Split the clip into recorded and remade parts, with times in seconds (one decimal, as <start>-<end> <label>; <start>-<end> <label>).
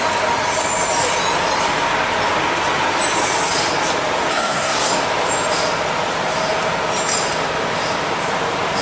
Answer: 0.0-4.3 recorded; 4.3-4.9 remade; 4.9-8.8 recorded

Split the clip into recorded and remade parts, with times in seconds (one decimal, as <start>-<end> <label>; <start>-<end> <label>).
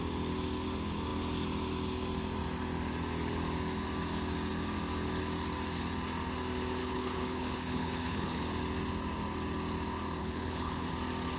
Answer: 0.0-6.8 recorded; 6.8-8.4 remade; 8.4-10.2 recorded; 10.2-10.9 remade; 10.9-11.4 recorded